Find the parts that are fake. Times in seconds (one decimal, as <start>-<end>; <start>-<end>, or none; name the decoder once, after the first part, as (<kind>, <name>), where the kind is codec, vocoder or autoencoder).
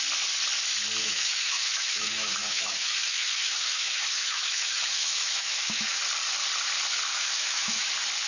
1.0-6.0 (autoencoder, DAC-VAE); 7.1-7.9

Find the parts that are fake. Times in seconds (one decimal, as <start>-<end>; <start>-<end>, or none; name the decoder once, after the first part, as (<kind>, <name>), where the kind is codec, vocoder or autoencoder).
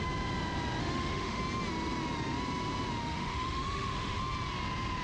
0.8-1.4 (autoencoder, DAC-VAE); 3.0-4.2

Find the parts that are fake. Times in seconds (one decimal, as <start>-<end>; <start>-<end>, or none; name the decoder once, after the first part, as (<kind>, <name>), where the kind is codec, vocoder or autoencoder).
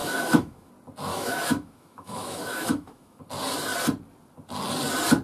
0.0-0.7 (autoencoder, DAC-VAE); 1.1-3.2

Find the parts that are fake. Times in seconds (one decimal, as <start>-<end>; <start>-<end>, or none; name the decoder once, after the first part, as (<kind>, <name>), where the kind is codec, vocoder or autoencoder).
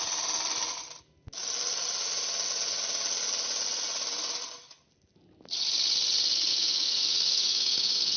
6.5-8.2 (autoencoder, DAC-VAE)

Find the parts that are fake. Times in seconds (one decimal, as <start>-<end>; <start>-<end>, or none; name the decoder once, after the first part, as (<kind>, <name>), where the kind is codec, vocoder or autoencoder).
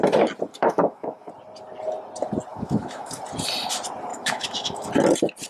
0.5-1.3 (autoencoder, DAC-VAE); 2.5-3.2; 4.1-4.9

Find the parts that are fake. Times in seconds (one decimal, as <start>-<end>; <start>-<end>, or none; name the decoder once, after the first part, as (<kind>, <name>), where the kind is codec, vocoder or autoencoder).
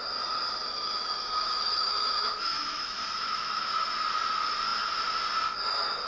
0.6-3.7 (autoencoder, DAC-VAE)